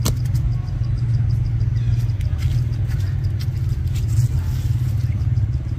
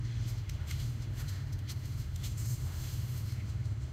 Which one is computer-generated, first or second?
second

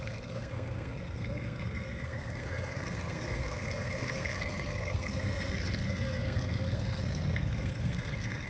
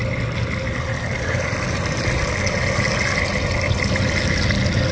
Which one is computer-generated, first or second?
first